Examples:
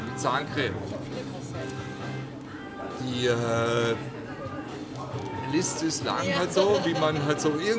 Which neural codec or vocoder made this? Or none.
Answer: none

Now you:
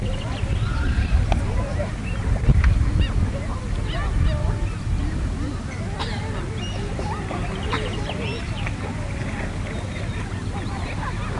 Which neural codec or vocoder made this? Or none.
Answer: none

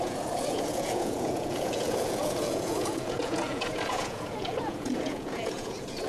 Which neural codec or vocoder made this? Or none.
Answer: vocoder, Vocos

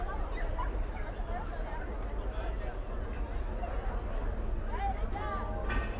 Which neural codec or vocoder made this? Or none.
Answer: none